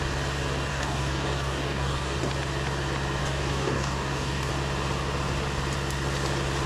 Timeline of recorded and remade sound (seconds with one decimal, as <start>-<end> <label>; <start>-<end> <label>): 0.0-0.7 recorded; 0.7-2.2 remade; 2.2-3.2 recorded; 3.2-4.5 remade; 4.5-6.7 recorded